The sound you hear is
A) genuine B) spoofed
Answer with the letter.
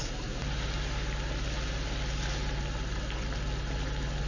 A